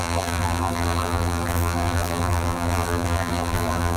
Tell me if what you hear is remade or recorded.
remade